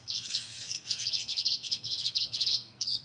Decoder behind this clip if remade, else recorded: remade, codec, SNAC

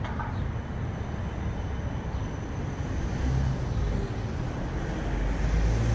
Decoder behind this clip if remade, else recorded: recorded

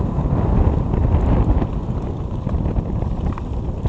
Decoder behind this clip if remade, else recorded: recorded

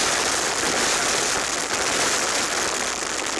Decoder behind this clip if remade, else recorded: recorded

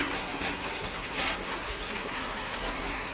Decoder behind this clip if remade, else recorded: remade, codec, SNAC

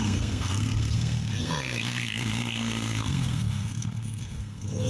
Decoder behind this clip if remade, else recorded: remade, codec, SNAC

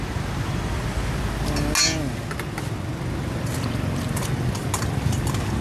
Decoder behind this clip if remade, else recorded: recorded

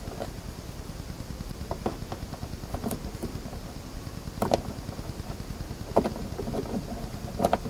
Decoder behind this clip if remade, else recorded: recorded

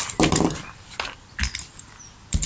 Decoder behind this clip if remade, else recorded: recorded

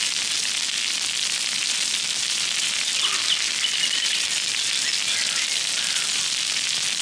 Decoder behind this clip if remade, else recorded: recorded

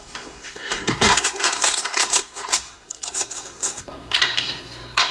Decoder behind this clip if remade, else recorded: remade, codec, SNAC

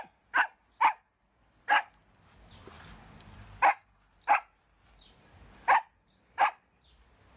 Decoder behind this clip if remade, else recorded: recorded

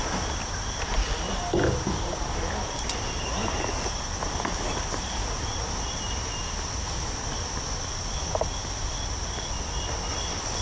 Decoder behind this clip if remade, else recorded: recorded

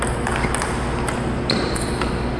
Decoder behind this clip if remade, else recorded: recorded